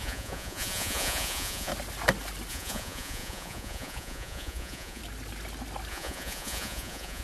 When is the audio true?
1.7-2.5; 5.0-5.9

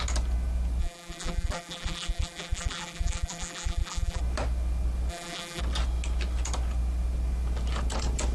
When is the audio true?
0.0-0.8; 4.2-5.1; 5.6-8.3

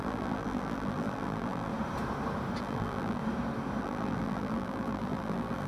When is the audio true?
1.7-2.6; 3.2-3.8

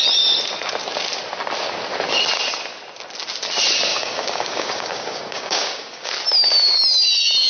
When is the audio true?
0.0-3.9; 6.1-7.5

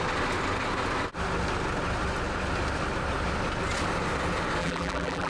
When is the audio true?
0.0-4.6

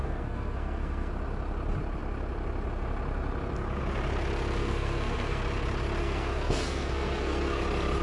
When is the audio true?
1.1-4.6; 5.4-6.0; 7.6-8.0

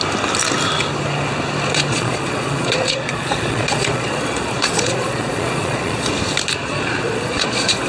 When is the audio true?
0.0-1.9; 6.1-6.6